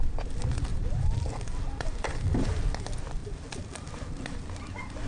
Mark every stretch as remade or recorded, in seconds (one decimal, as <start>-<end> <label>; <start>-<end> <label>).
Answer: 0.0-0.7 recorded; 0.7-2.6 remade; 2.6-3.2 recorded; 3.2-4.4 remade; 4.4-5.1 recorded